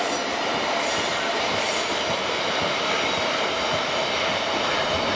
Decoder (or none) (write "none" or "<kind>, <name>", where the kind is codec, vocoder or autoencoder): none